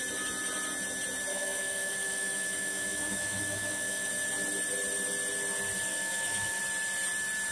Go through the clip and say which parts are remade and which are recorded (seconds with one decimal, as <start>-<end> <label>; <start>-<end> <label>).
0.0-1.3 recorded; 1.3-4.1 remade; 4.1-5.9 recorded; 5.9-6.6 remade; 6.6-7.5 recorded